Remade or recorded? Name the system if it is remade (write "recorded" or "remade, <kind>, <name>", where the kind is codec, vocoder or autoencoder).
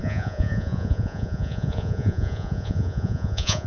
remade, vocoder, Vocos